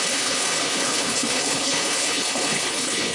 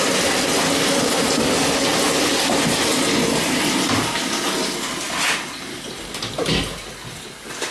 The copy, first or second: first